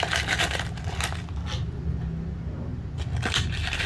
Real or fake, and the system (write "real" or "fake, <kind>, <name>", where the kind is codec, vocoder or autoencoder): real